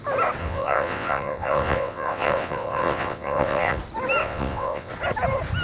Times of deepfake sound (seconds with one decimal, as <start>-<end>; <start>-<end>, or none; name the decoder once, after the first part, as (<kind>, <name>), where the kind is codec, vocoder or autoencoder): 0.4-3.8 (vocoder, WaveNeXt); 4.2-4.9